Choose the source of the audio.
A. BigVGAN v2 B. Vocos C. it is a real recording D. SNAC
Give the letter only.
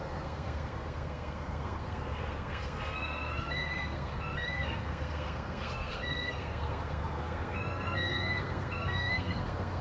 D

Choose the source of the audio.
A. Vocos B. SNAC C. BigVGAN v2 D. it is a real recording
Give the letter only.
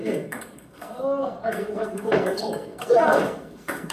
B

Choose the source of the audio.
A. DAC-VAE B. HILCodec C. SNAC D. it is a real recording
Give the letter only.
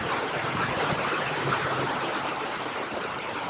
D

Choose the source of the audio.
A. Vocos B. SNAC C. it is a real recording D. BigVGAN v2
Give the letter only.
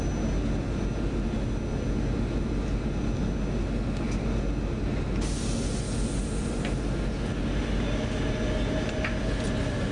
C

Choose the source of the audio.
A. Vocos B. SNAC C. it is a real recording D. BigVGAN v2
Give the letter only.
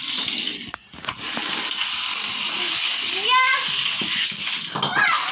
C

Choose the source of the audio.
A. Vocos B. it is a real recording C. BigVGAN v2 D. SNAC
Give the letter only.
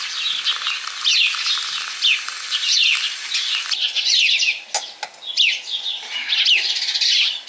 B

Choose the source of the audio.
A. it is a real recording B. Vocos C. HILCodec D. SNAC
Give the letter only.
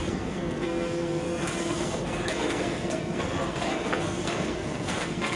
D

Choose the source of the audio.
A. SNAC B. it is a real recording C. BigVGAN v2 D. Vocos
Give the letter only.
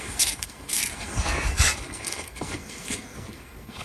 A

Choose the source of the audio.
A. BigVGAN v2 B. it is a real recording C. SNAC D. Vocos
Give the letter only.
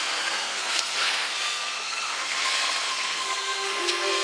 C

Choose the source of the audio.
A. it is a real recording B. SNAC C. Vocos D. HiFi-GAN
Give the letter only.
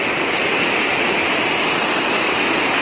A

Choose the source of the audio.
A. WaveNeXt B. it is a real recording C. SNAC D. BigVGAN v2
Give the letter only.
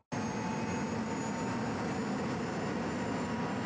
B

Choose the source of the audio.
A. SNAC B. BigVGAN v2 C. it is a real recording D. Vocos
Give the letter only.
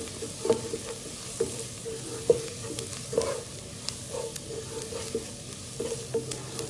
C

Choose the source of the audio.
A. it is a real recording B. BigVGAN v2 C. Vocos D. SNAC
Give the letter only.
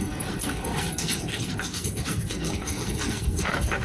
D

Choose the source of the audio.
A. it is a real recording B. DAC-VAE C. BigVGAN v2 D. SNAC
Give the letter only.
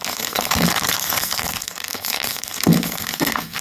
D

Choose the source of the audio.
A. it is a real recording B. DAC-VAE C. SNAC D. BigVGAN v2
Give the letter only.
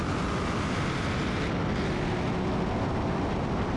A